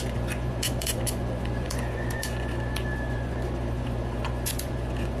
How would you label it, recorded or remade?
remade